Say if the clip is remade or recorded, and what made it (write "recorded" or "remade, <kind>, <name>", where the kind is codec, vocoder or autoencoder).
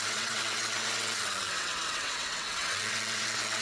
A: remade, vocoder, WaveNeXt